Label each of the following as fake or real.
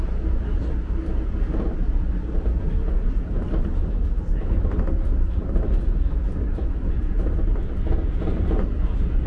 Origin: real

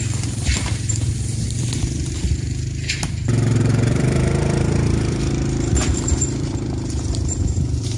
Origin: fake